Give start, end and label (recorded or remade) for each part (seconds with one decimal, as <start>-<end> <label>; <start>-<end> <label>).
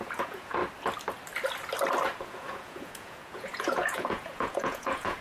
0.0-0.6 remade; 0.6-2.2 recorded; 2.2-5.2 remade